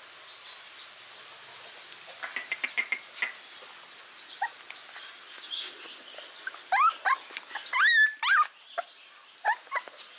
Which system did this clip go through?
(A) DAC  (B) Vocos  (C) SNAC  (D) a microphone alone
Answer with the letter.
D